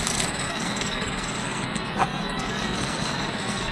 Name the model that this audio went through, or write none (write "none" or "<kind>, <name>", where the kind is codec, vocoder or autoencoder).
codec, SNAC